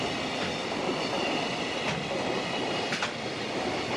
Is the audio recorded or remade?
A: recorded